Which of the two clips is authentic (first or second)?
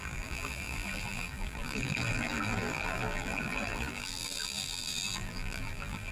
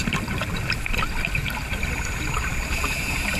second